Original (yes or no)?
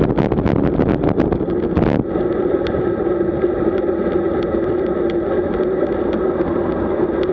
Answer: yes